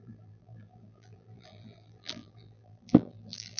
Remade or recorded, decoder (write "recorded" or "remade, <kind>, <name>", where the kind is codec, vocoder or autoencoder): remade, vocoder, BigVGAN v2